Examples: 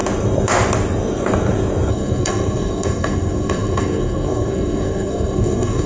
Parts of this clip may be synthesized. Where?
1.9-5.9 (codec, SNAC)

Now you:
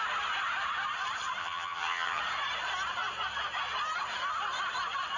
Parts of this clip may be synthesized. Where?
1.4-2.2 (vocoder, HiFi-GAN)